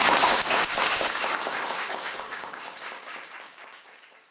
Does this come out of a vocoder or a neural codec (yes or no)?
yes